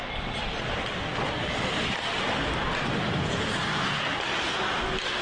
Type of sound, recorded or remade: recorded